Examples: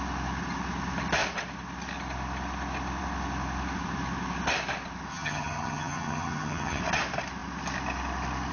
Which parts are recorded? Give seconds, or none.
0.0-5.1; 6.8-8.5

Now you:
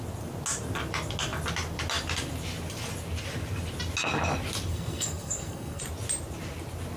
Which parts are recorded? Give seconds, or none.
0.0-4.7; 5.8-7.0

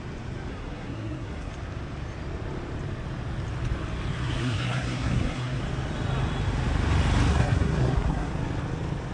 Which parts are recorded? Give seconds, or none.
0.0-0.5; 1.5-4.1; 5.6-7.3; 8.3-9.1

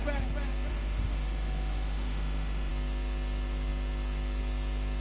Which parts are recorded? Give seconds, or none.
0.0-0.7; 2.7-5.0

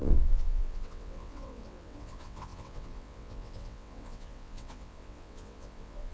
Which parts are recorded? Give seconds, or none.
none

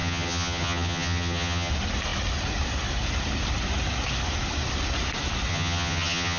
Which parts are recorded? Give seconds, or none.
1.7-5.5

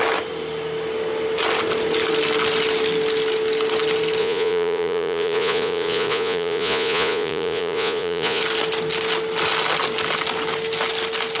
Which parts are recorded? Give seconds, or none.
0.0-4.2; 8.4-11.4